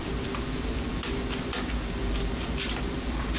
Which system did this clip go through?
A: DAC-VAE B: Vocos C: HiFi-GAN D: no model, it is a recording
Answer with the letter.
D